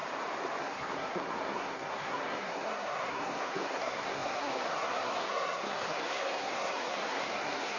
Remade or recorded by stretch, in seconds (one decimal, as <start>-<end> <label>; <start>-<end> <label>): 0.0-0.6 recorded; 0.6-7.8 remade